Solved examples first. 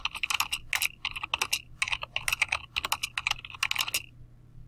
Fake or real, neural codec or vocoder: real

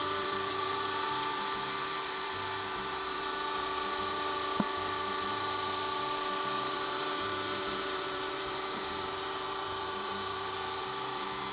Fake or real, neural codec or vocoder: fake, vocoder, BigVGAN v2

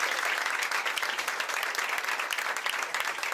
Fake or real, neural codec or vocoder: real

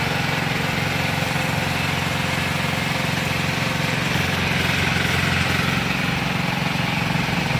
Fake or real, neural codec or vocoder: real